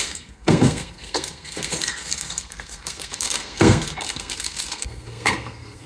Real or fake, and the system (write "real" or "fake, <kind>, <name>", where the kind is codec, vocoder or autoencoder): fake, codec, SNAC